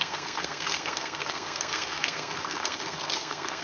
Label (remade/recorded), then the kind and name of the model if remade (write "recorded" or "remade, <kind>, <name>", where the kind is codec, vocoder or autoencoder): remade, codec, SNAC